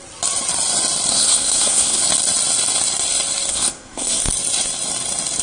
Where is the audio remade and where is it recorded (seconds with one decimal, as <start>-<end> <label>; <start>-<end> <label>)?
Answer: 0.0-1.1 recorded; 1.1-2.0 remade; 2.0-3.5 recorded; 3.5-4.2 remade; 4.2-5.4 recorded